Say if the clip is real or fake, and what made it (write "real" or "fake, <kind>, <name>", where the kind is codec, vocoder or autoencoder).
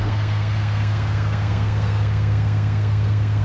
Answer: fake, codec, SNAC